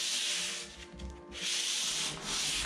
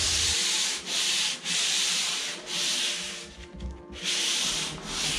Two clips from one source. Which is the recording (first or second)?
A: first